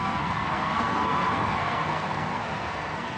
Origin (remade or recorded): remade